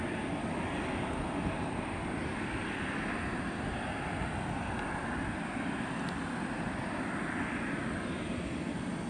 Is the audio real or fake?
real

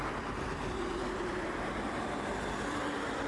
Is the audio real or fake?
real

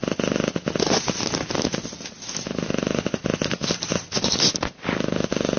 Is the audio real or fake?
real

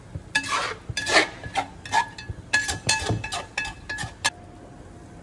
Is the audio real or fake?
real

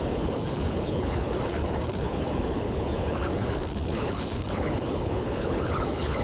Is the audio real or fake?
fake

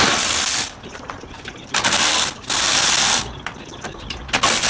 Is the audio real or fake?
real